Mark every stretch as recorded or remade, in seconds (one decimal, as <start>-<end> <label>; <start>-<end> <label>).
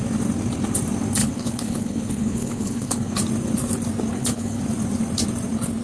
0.0-1.2 recorded; 1.2-3.1 remade; 3.1-4.1 recorded; 4.1-4.6 remade; 4.6-5.8 recorded